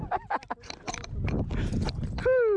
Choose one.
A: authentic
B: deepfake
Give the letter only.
A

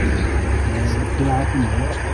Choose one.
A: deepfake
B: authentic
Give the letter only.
B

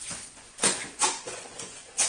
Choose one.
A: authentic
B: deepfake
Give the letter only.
B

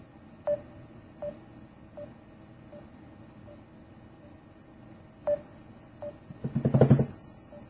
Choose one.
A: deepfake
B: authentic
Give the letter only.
B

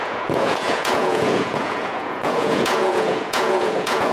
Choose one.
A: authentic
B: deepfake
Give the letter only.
B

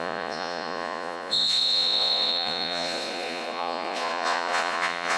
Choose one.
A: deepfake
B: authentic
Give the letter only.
A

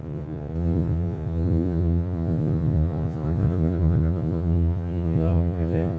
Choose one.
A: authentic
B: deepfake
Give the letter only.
B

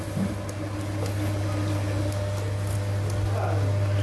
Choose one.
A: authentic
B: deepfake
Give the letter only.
A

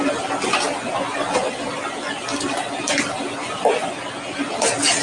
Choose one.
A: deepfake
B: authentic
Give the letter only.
B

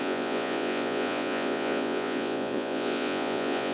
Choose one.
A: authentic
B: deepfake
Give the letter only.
B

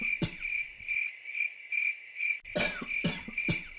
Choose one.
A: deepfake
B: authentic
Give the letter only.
B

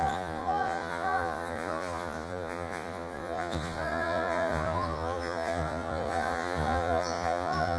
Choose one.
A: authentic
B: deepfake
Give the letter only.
B